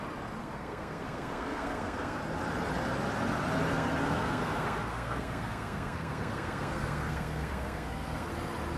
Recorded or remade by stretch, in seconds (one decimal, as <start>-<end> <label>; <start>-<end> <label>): 0.0-0.4 recorded; 0.4-2.2 remade; 2.2-3.7 recorded; 3.7-8.3 remade; 8.3-8.8 recorded